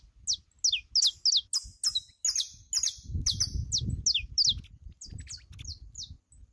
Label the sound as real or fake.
real